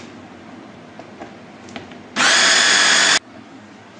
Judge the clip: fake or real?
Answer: real